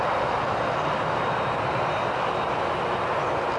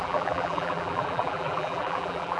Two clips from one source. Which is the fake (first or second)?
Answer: second